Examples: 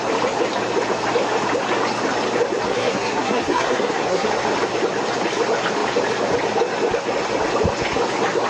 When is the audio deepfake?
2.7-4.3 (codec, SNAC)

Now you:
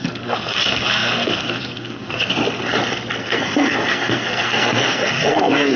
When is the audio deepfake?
0.0-2.3 (codec, SNAC); 3.2-5.8